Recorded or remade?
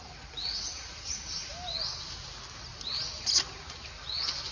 recorded